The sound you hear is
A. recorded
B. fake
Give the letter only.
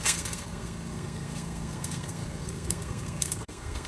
B